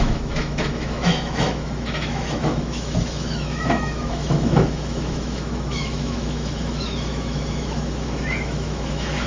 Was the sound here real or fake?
fake